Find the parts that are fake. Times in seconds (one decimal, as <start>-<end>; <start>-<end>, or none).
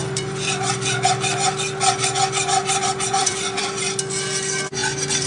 0.0-0.6; 2.6-3.8; 4.8-5.3